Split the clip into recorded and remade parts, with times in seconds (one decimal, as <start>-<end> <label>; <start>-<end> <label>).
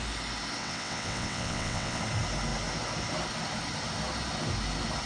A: 0.0-0.6 recorded; 0.6-2.0 remade; 2.0-5.1 recorded